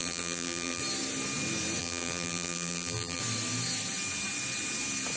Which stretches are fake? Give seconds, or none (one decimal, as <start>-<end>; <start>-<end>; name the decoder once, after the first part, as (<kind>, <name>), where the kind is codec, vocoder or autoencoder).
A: 0.0-0.8 (vocoder, BigVGAN v2); 1.8-3.2